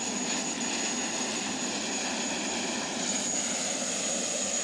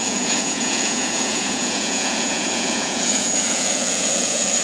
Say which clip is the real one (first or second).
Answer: first